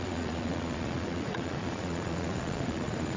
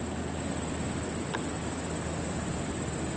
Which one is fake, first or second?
first